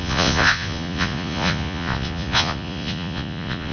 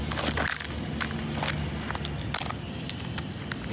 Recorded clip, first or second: second